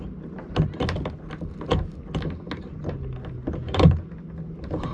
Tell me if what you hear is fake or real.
real